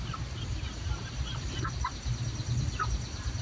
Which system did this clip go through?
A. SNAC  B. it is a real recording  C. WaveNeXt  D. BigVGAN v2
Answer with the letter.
B